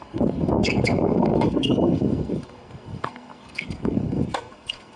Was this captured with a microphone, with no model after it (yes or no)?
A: no